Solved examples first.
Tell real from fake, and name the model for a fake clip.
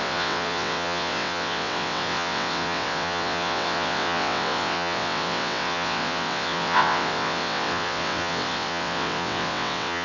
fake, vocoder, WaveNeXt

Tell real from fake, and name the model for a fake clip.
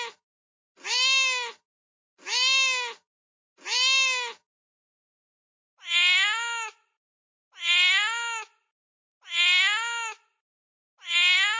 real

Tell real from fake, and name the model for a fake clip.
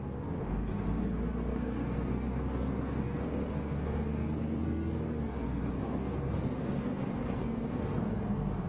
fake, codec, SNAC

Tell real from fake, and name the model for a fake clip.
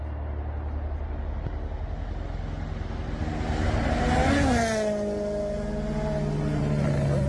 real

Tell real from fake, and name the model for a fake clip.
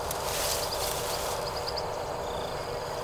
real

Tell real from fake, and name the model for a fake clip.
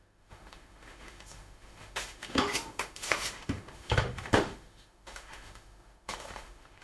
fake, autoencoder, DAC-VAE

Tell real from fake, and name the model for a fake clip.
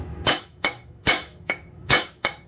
fake, autoencoder, DAC-VAE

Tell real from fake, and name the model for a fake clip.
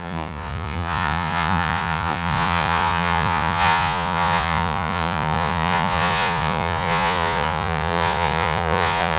fake, vocoder, Vocos